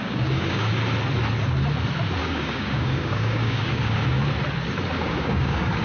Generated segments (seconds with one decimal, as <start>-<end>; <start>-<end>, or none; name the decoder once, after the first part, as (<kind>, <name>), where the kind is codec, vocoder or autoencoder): 0.0-0.7 (codec, DAC); 2.2-4.2; 4.9-5.8

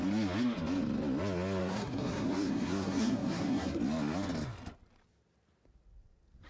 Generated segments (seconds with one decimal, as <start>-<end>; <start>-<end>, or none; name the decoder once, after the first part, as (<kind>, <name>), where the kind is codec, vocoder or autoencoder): 1.6-3.8 (codec, SNAC)

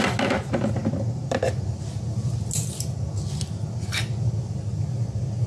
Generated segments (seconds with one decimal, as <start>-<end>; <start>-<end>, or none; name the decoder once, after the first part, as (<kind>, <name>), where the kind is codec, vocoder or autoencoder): none

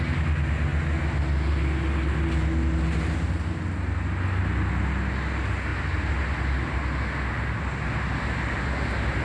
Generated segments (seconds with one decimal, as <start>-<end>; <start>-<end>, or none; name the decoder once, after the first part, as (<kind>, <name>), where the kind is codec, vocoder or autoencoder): none

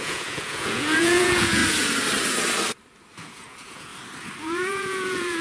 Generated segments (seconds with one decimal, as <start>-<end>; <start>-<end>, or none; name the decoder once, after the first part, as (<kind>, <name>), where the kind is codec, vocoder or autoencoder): 0.0-1.6 (vocoder, Vocos); 3.2-3.9; 4.4-5.4

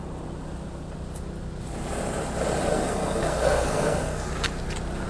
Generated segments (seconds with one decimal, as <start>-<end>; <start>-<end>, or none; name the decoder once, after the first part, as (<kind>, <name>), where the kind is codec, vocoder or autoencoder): 2.7-4.3 (codec, SNAC)